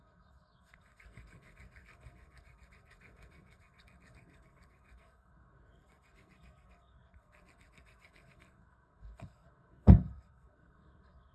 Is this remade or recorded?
remade